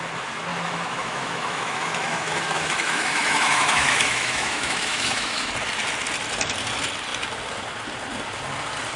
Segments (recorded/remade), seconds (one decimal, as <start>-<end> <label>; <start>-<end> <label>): 0.0-0.5 recorded; 0.5-5.5 remade; 5.5-9.0 recorded

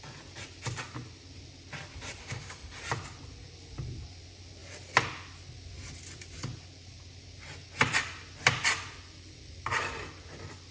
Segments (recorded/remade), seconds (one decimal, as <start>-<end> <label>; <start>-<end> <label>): 0.0-2.2 recorded; 2.2-2.8 remade; 2.8-10.7 recorded

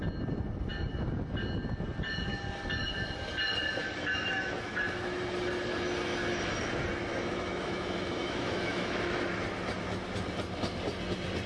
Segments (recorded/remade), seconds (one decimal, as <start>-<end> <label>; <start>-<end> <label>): 0.0-3.8 recorded; 3.8-5.2 remade; 5.2-7.1 recorded; 7.1-9.2 remade; 9.2-11.5 recorded

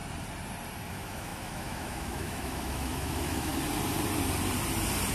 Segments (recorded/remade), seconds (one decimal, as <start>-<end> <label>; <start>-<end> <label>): 0.0-0.9 recorded; 0.9-3.5 remade; 3.5-5.1 recorded

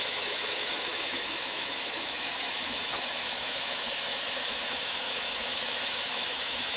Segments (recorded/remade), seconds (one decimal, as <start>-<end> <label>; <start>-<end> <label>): 0.0-6.8 remade

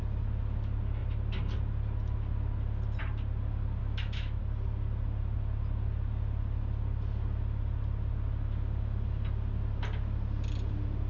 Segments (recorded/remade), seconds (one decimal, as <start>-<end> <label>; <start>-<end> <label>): 0.0-3.8 recorded; 3.8-4.4 remade; 4.4-11.1 recorded

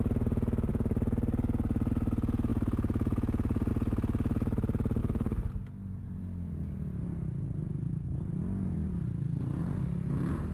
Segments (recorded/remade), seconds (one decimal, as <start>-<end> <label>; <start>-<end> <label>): 0.0-5.0 recorded; 5.0-5.5 remade; 5.5-10.5 recorded

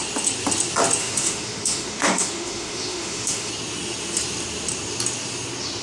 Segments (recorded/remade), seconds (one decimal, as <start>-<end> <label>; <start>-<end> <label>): 0.0-1.0 recorded; 1.0-3.5 remade; 3.5-5.8 recorded